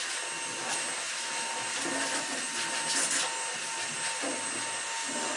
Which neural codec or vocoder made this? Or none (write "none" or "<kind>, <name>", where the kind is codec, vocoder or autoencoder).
none